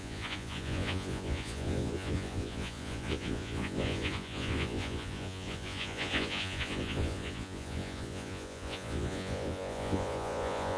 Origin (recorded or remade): remade